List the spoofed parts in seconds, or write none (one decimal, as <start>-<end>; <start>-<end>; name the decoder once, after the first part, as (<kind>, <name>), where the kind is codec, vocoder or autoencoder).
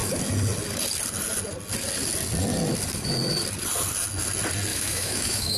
4.7-5.6 (autoencoder, DAC-VAE)